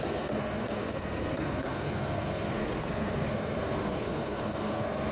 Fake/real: fake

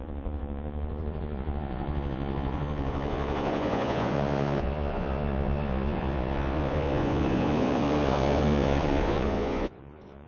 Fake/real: fake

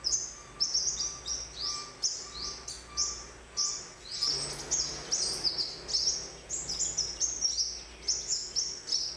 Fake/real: real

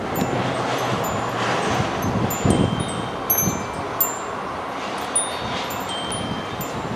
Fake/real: real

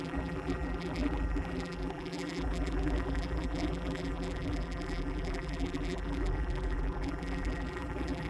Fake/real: fake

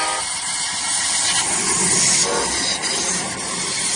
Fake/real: real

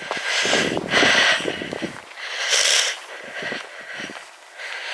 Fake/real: real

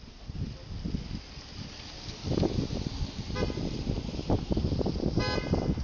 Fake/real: real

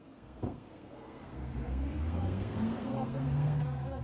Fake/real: fake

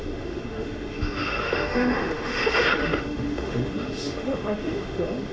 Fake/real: fake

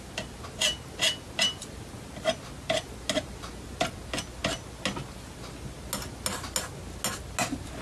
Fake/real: real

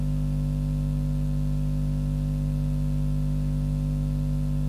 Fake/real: real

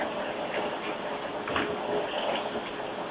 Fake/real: real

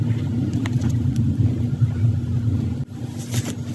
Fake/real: real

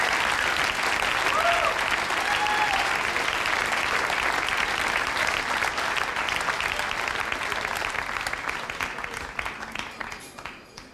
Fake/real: real